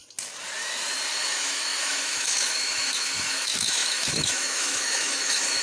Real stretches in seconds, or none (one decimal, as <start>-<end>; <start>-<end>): 0.0-1.2